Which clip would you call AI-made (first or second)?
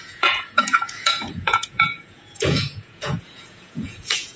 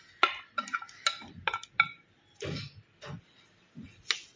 first